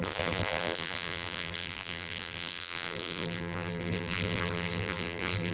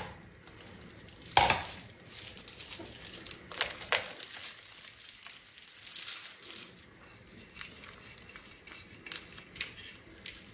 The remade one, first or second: first